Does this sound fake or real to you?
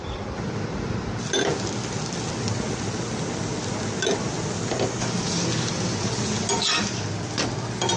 real